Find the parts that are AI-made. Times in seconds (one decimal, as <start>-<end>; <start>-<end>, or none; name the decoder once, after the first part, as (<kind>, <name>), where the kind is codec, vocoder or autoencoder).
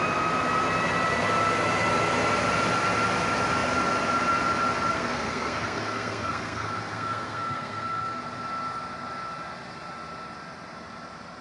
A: 4.9-8.2 (codec, SNAC)